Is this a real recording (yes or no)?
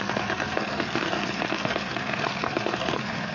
no